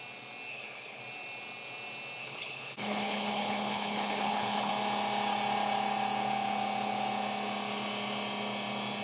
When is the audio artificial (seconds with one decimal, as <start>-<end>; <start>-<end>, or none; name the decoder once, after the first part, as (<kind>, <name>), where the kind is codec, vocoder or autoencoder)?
0.5-1.0 (codec, HILCodec); 2.2-4.7